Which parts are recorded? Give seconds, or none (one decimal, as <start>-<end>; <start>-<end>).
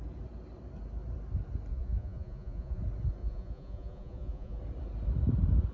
0.0-1.7; 2.8-3.2; 4.6-5.7